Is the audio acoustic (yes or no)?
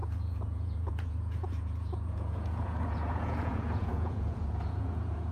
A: no